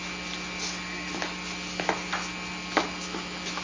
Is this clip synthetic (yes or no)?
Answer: no